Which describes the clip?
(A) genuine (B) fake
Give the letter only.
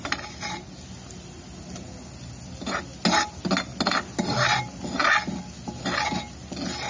A